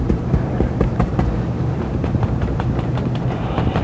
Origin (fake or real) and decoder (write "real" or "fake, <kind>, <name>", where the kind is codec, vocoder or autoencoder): fake, vocoder, BigVGAN v2